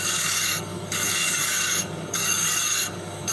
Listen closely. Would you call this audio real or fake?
fake